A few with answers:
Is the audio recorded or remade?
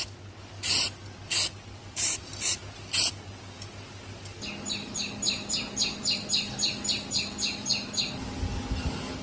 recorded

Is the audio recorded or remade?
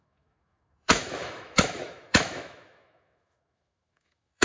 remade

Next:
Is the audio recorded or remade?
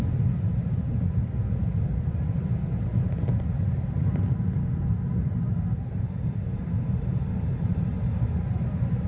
recorded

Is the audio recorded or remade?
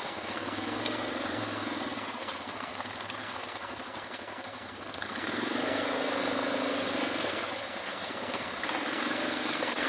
remade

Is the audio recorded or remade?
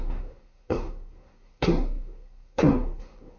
remade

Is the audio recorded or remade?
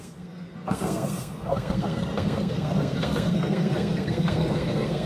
remade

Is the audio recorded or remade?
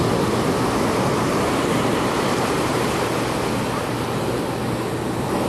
recorded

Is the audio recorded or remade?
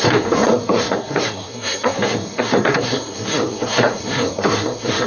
remade